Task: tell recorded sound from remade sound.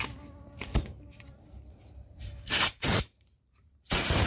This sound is remade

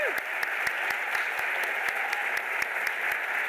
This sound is recorded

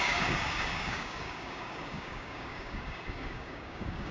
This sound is remade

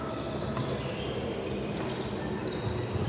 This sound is recorded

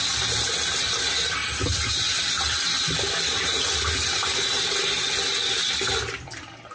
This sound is recorded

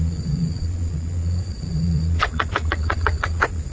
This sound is remade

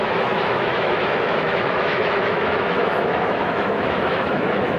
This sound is remade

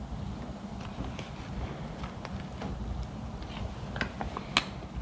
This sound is recorded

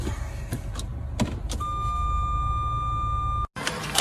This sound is recorded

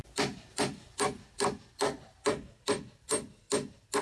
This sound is remade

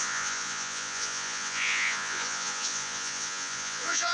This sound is remade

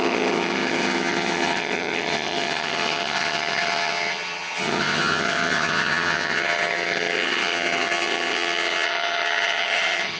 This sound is remade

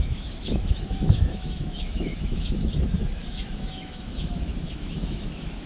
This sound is remade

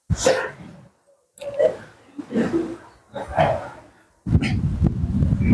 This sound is recorded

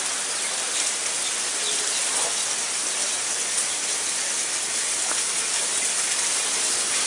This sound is recorded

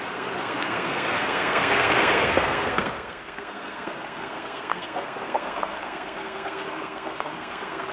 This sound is remade